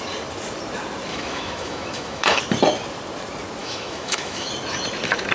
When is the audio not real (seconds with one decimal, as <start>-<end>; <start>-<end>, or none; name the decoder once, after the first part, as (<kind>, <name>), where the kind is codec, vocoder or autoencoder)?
1.1-2.4 (autoencoder, DAC-VAE); 3.6-4.5

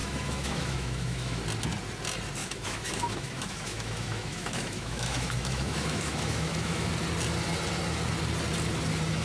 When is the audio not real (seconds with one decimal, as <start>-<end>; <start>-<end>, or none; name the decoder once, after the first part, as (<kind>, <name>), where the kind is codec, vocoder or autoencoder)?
0.0-1.4 (autoencoder, DAC-VAE); 2.4-6.9

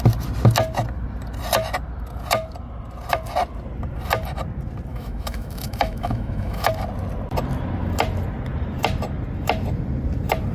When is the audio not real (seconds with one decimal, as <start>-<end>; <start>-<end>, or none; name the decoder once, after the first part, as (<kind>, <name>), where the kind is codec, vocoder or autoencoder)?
4.9-6.7 (autoencoder, DAC-VAE)